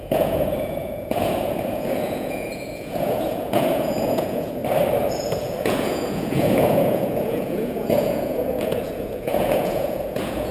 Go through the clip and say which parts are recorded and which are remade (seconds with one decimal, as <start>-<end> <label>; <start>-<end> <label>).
0.0-4.6 remade; 4.6-5.2 recorded; 5.2-10.5 remade